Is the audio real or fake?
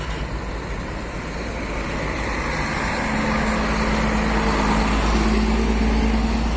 real